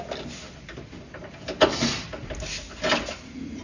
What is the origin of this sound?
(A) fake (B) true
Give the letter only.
B